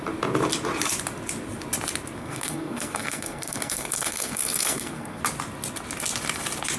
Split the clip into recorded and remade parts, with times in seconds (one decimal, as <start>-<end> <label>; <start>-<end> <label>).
0.0-2.2 recorded; 2.2-5.2 remade; 5.2-6.8 recorded